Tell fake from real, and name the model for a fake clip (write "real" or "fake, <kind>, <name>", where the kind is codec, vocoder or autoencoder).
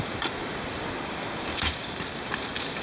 real